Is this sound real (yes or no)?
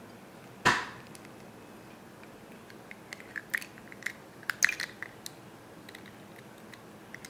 yes